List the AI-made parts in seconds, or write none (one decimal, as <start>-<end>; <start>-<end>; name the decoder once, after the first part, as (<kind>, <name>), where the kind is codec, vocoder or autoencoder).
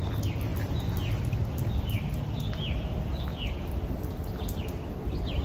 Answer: none